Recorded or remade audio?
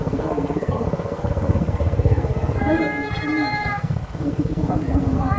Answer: remade